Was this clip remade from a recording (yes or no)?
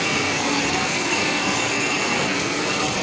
yes